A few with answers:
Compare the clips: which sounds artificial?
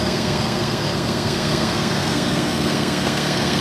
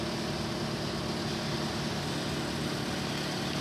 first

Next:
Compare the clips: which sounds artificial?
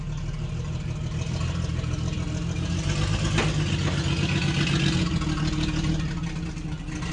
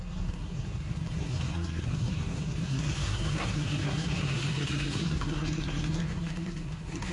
second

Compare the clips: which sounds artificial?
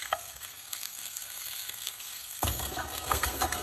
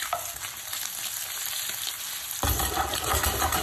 first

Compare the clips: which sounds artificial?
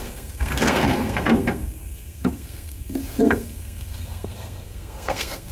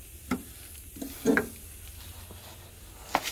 first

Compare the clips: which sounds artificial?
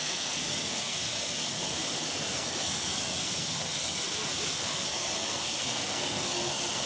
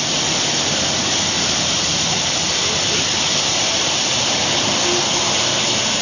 first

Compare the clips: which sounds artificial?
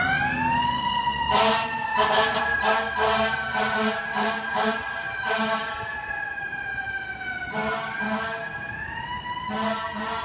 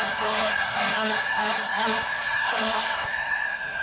second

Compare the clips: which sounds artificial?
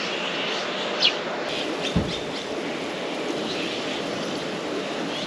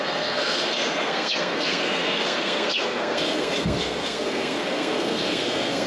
second